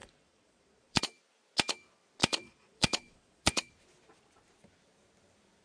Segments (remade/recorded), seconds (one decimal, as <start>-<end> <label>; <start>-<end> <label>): 0.0-1.0 remade; 1.0-2.2 recorded; 2.2-3.7 remade; 3.7-5.6 recorded